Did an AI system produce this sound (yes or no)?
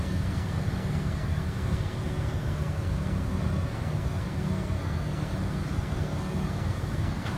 yes